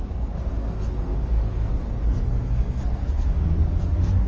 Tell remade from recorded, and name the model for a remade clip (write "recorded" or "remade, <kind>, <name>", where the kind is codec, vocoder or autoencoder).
remade, codec, SNAC